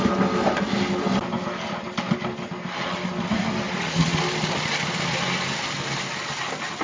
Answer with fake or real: real